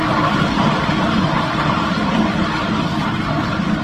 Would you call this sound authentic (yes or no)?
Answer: yes